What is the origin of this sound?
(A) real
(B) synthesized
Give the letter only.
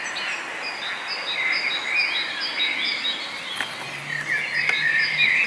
A